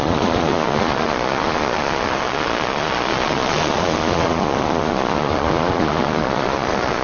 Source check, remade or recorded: remade